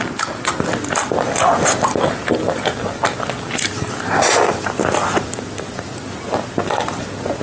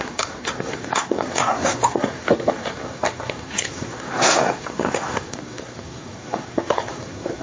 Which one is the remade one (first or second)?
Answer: second